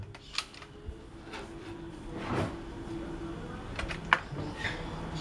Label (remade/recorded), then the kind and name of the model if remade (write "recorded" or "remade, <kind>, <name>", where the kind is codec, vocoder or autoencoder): recorded